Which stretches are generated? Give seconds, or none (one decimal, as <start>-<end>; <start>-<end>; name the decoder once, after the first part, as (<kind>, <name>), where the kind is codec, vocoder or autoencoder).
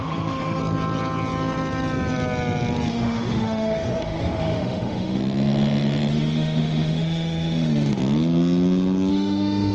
0.0-0.6 (autoencoder, DAC-VAE); 2.9-5.2; 6.1-8.0; 9.1-9.7